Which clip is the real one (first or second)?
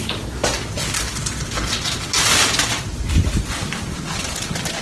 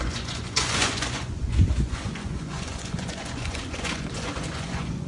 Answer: first